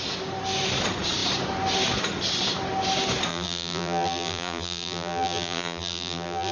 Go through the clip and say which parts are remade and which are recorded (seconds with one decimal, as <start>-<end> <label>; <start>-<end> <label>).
0.0-3.3 recorded; 3.3-6.5 remade